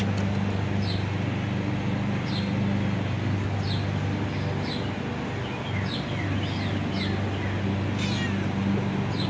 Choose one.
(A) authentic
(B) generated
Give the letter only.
A